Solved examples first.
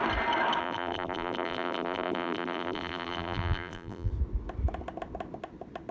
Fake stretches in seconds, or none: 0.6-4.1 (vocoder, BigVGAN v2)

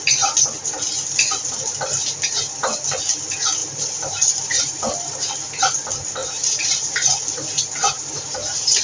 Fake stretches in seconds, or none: 3.6-5.3 (vocoder, BigVGAN v2); 6.2-8.8

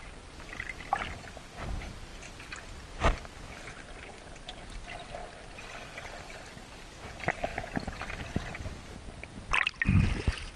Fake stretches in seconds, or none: 5.2-6.1 (vocoder, BigVGAN v2)

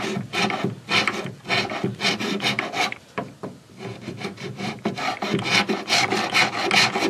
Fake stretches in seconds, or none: 1.9-5.8 (vocoder, BigVGAN v2)

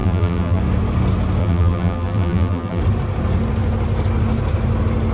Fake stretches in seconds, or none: 0.0-0.6 (vocoder, BigVGAN v2); 1.4-2.8

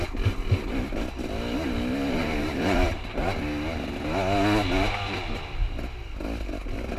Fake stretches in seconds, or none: 2.2-3.2 (vocoder, BigVGAN v2)

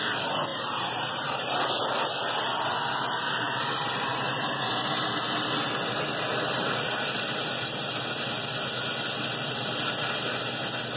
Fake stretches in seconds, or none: 0.5-1.6 (vocoder, BigVGAN v2); 4.1-4.7; 6.3-7.9